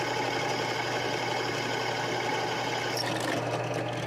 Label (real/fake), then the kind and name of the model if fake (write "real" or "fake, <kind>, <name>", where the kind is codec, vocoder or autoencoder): real